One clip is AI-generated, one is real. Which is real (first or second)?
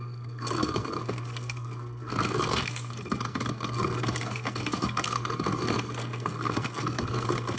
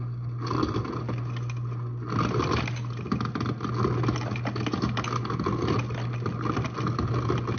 second